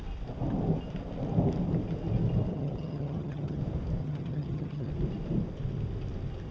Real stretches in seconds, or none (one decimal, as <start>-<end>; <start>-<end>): 0.0-2.5; 3.6-4.0; 4.9-6.5